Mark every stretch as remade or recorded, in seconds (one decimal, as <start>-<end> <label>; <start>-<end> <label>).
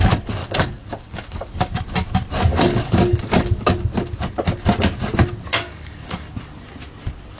0.0-0.4 recorded; 0.4-1.7 remade; 1.7-2.5 recorded; 2.5-3.7 remade; 3.7-5.5 recorded; 5.5-6.3 remade; 6.3-7.4 recorded